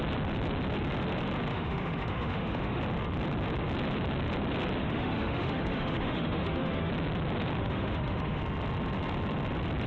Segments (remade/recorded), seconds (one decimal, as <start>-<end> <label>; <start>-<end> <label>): 0.0-1.5 recorded; 1.5-2.8 remade; 2.8-4.8 recorded; 4.8-6.9 remade; 6.9-7.6 recorded; 7.6-8.4 remade; 8.4-9.9 recorded